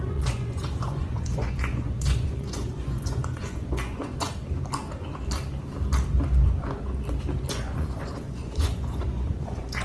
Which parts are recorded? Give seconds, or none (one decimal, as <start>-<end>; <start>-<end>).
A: 4.3-7.5